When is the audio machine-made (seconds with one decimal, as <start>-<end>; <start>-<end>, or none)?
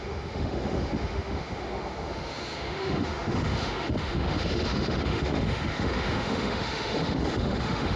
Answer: 0.0-8.0